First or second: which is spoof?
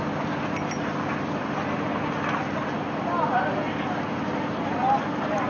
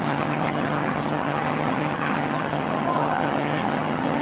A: second